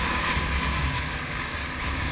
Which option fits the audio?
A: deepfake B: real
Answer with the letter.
A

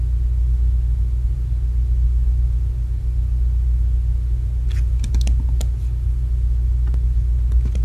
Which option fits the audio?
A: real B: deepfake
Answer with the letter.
A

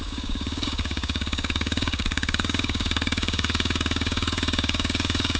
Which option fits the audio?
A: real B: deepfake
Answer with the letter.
B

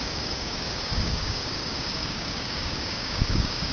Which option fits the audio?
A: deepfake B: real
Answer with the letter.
A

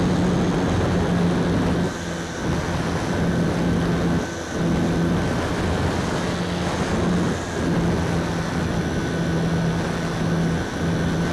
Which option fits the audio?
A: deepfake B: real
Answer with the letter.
B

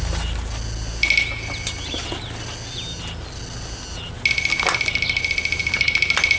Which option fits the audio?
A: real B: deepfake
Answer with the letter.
A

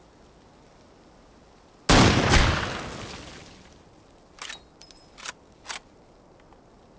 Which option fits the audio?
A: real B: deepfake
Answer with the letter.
A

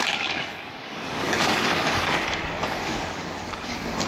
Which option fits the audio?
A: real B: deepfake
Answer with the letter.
B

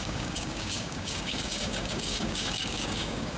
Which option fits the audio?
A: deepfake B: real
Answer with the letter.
A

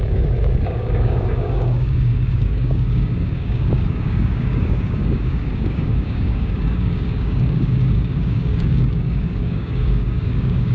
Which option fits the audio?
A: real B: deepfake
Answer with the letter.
B